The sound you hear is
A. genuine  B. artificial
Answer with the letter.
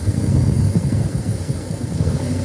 B